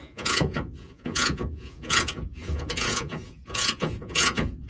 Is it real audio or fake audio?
fake